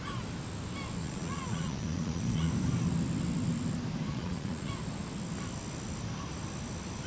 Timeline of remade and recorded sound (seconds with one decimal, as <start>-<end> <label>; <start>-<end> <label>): 0.0-1.0 recorded; 1.0-2.5 remade; 2.5-4.1 recorded; 4.1-4.7 remade; 4.7-7.1 recorded